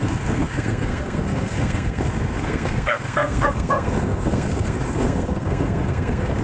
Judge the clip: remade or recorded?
remade